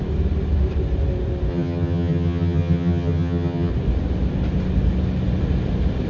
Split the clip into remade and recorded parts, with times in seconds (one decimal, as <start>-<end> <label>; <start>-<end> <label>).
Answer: 0.0-1.5 recorded; 1.5-3.7 remade; 3.7-6.1 recorded